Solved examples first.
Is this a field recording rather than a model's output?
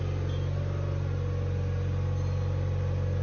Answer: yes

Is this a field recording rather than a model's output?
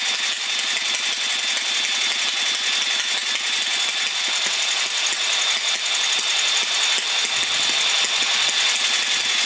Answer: yes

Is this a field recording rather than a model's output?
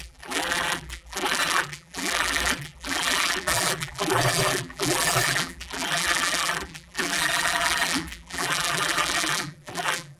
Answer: no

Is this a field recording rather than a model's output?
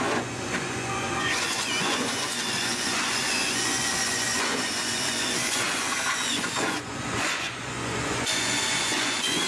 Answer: no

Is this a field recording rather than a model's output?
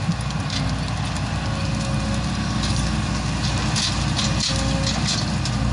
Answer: yes